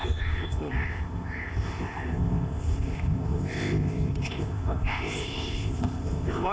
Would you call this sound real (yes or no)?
no